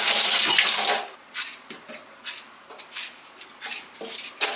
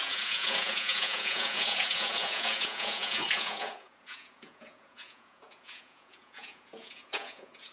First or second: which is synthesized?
second